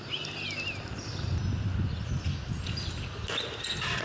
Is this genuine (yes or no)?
yes